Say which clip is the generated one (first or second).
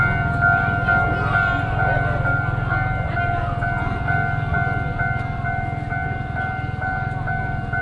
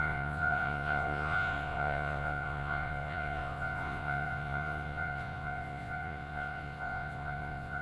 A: second